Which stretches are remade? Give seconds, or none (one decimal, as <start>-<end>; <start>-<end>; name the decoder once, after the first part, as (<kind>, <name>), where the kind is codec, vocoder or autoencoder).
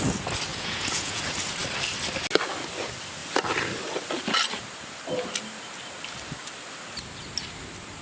0.5-1.2 (vocoder, Vocos)